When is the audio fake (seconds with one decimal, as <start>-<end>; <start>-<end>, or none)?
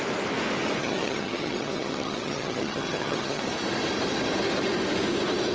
0.8-3.4